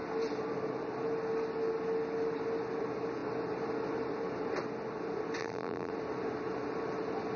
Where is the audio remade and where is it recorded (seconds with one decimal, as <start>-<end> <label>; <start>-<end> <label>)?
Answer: 0.0-5.4 recorded; 5.4-5.9 remade; 5.9-7.4 recorded